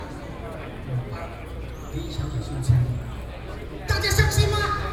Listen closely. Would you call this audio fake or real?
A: real